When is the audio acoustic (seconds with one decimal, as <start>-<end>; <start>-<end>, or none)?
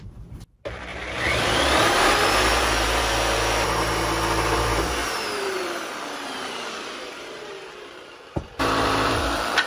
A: 0.0-0.9; 3.0-5.0